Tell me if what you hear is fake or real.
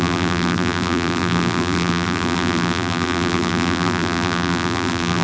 fake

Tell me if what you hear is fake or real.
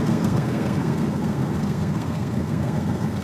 fake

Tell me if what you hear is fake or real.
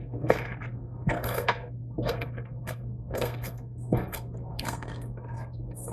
fake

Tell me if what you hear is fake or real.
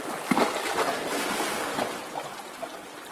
real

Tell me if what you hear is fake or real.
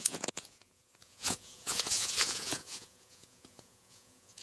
fake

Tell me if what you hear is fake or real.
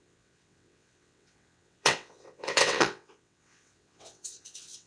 fake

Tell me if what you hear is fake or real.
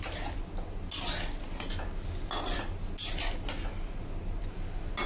real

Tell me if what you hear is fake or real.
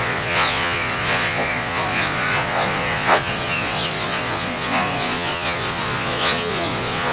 fake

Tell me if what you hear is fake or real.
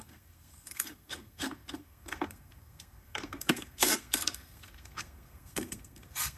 fake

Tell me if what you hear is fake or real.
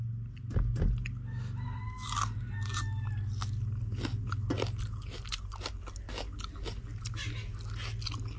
real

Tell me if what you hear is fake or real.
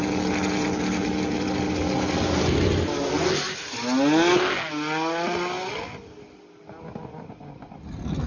real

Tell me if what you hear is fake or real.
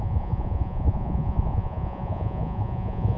fake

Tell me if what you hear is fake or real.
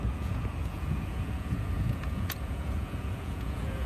fake